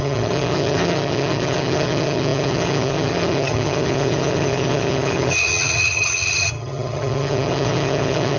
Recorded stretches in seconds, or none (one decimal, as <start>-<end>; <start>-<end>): none